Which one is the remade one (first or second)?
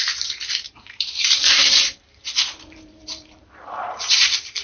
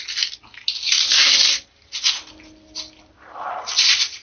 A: first